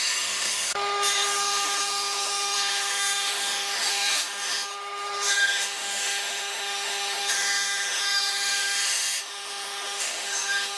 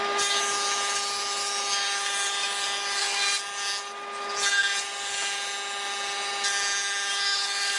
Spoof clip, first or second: first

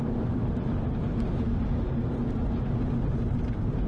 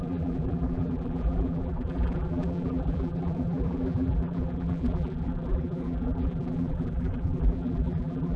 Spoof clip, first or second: second